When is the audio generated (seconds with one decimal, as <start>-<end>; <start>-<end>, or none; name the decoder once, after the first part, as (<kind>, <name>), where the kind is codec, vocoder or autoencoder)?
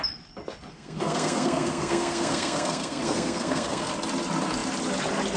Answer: 0.7-3.9 (codec, SNAC)